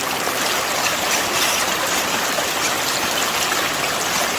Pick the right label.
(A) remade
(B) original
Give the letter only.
B